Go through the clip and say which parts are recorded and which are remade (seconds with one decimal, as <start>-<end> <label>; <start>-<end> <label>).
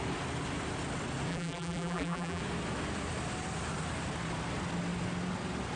0.0-1.3 recorded; 1.3-2.4 remade; 2.4-5.8 recorded